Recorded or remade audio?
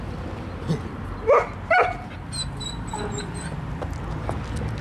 recorded